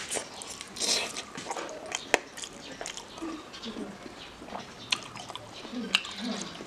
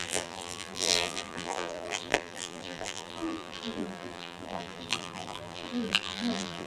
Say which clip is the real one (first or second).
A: first